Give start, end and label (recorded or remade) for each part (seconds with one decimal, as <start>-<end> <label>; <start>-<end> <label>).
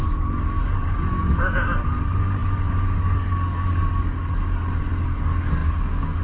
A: 0.0-6.2 remade